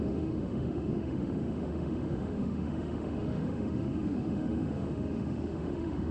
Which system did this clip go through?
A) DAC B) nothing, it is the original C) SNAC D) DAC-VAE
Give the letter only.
D